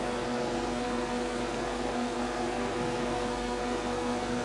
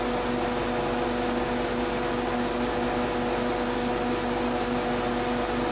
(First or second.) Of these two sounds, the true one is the second